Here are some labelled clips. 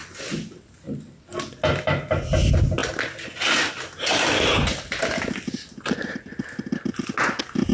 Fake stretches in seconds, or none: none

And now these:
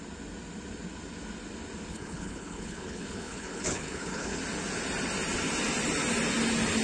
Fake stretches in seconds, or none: 1.9-4.4 (codec, HILCodec)

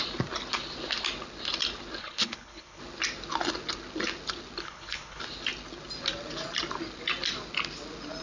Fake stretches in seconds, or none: 2.0-2.8 (codec, HILCodec); 4.6-5.2

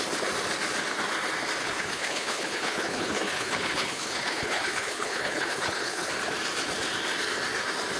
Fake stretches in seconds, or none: 1.6-6.1 (codec, HILCodec)